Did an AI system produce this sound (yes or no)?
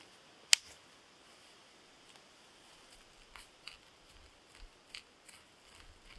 no